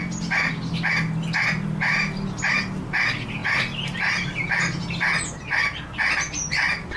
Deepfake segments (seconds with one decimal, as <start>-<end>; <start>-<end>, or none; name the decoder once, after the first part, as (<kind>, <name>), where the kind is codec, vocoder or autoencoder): none